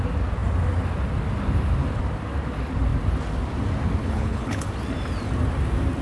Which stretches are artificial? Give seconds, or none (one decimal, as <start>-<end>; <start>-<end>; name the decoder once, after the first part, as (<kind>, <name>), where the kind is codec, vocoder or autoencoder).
4.0-4.7 (codec, HILCodec)